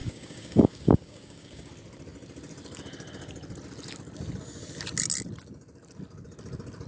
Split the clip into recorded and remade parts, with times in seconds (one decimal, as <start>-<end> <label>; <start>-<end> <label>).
0.0-1.7 remade; 1.7-6.9 recorded